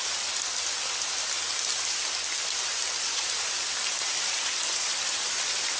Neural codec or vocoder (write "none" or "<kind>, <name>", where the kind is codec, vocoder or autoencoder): none